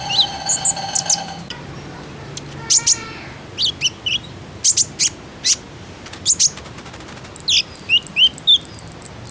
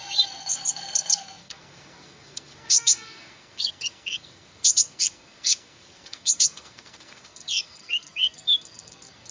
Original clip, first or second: first